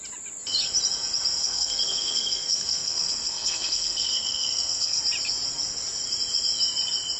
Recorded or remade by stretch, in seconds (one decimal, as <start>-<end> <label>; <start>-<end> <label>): 0.0-1.4 recorded; 1.4-5.0 remade; 5.0-7.2 recorded